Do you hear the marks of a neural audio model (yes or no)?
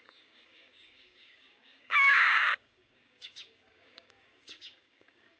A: yes